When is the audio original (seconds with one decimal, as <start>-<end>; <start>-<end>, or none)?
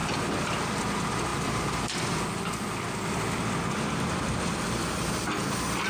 0.8-1.3; 4.8-5.9